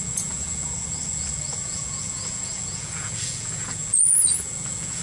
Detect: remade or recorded remade